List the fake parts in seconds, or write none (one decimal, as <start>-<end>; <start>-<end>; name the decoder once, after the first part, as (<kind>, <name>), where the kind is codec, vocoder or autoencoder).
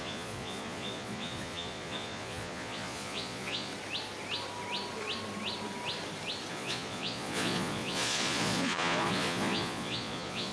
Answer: 0.0-3.7 (vocoder, Vocos); 6.5-10.5